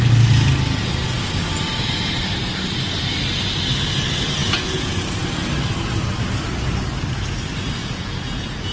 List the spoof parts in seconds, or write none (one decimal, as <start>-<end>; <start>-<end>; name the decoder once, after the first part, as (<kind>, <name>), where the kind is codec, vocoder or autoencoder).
4.4-5.0 (vocoder, Vocos); 7.8-8.7